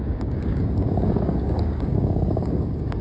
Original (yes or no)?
no